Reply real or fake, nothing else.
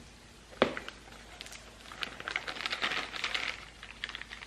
real